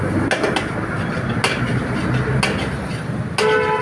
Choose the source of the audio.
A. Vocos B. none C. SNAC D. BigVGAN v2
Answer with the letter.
B